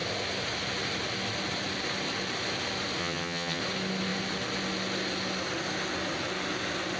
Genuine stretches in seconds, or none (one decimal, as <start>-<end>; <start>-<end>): 0.0-3.0; 3.6-7.0